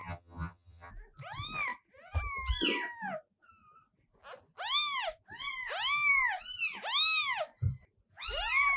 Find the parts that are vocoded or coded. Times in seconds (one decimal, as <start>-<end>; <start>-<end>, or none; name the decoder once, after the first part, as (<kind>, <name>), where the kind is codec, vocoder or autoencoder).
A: 0.0-0.9 (vocoder, HiFi-GAN)